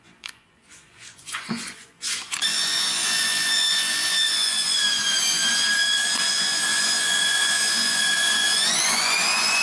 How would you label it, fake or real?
fake